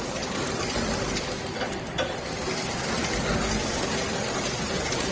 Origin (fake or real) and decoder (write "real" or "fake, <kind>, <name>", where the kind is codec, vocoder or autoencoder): real